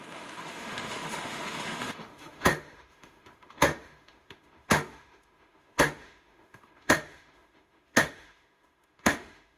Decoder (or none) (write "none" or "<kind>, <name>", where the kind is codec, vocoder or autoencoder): autoencoder, DAC-VAE